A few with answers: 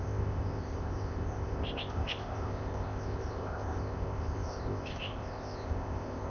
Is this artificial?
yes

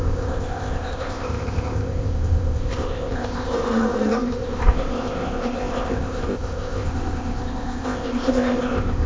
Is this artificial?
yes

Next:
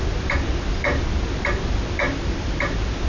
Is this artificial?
no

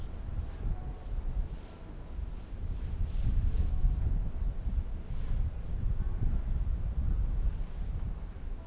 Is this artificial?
no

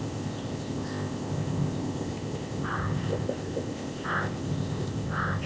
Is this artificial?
yes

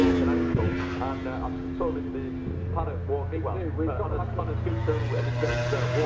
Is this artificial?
no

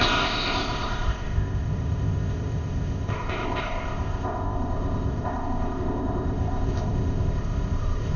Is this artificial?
yes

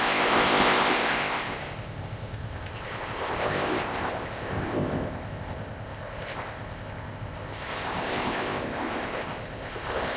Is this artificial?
yes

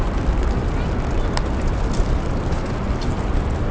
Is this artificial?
no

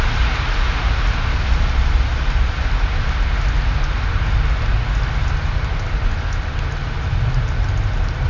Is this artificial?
no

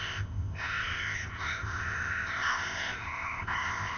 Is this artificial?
yes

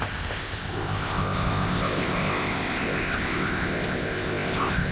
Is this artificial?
yes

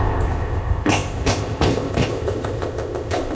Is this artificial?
yes